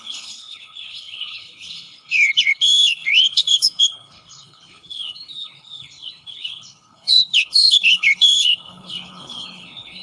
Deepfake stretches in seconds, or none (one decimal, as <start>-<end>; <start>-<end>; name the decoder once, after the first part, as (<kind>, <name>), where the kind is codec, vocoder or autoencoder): 0.0-10.0 (codec, HILCodec)